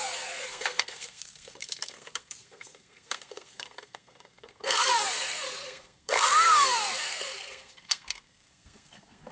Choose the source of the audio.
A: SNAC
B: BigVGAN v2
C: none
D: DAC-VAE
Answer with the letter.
A